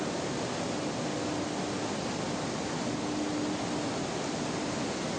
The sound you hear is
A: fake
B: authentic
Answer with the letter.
B